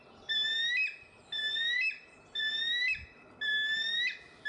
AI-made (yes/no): no